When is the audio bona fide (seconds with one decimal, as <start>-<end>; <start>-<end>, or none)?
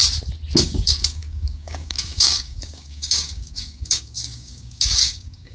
0.0-0.6